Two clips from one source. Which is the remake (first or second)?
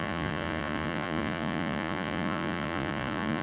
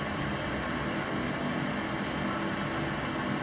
first